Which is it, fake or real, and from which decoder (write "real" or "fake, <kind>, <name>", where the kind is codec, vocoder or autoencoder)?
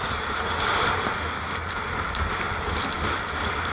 real